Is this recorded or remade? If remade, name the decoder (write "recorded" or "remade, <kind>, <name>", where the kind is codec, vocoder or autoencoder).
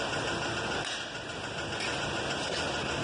recorded